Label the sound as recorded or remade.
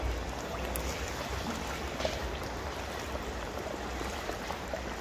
recorded